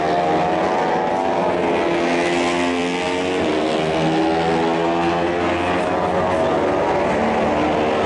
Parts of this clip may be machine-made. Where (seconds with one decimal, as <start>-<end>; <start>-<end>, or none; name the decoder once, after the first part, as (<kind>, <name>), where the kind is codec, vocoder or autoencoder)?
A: none